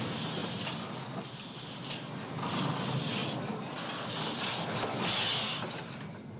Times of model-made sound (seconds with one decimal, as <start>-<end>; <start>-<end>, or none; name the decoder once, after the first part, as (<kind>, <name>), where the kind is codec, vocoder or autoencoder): none